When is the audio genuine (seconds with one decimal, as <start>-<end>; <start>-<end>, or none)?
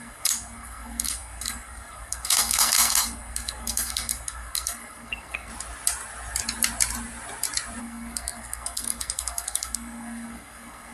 5.5-7.8